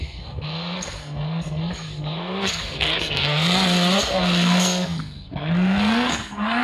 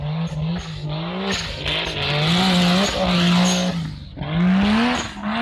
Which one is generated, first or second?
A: first